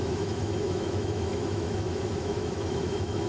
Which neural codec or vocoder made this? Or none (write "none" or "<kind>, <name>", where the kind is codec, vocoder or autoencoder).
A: autoencoder, DAC-VAE